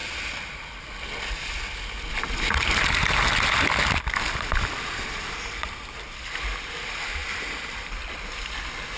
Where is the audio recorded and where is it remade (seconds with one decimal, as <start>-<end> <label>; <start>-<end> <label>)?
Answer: 0.0-9.0 recorded